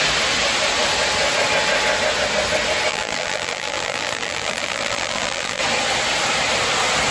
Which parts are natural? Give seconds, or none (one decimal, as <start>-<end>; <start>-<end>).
0.0-2.9; 5.6-7.1